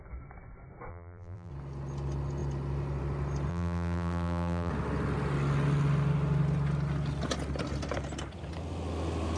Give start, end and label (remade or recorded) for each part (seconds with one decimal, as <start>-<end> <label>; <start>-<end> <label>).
0.0-0.9 recorded; 0.9-1.5 remade; 1.5-3.5 recorded; 3.5-4.7 remade; 4.7-9.4 recorded